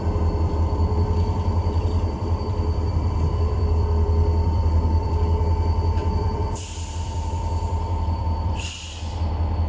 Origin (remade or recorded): remade